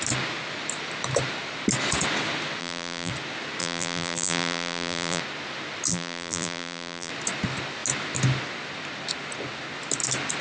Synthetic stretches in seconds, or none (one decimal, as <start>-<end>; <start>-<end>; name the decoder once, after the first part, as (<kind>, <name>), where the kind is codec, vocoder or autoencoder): 2.6-3.1 (vocoder, BigVGAN v2); 3.6-5.2; 5.9-7.1